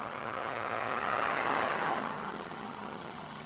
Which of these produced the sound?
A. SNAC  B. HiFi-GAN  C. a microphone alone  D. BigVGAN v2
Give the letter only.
B